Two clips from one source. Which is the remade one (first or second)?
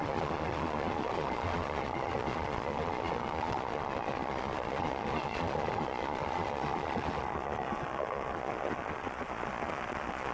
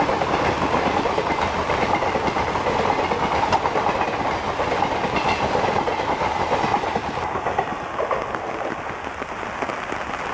first